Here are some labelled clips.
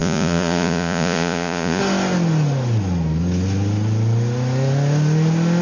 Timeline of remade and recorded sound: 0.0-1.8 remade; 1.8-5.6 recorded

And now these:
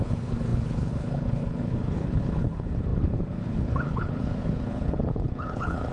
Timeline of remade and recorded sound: 0.0-5.9 remade

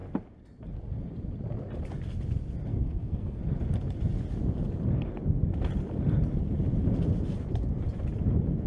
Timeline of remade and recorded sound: 0.0-2.7 recorded; 2.7-3.4 remade; 3.4-8.7 recorded

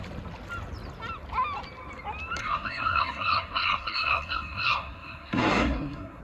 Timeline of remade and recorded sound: 0.0-2.4 recorded; 2.4-6.2 remade

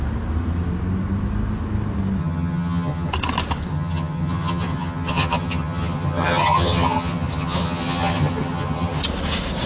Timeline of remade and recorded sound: 0.0-2.2 recorded; 2.2-3.1 remade; 3.1-3.7 recorded; 3.7-9.0 remade; 9.0-9.7 recorded

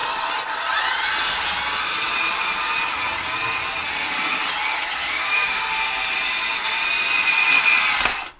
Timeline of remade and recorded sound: 0.0-5.0 recorded; 5.0-5.6 remade; 5.6-8.4 recorded